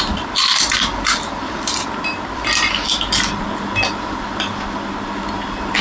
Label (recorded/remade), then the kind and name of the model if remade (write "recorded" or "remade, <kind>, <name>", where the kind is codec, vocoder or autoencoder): recorded